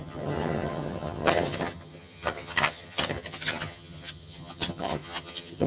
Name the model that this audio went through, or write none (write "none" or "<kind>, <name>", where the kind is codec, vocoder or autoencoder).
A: vocoder, HiFi-GAN